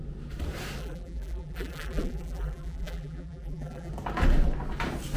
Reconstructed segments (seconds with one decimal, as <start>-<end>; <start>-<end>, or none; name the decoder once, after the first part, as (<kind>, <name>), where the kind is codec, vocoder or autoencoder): 0.8-3.9 (vocoder, BigVGAN v2)